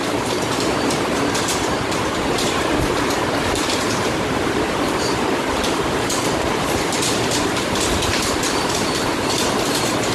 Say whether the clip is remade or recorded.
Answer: remade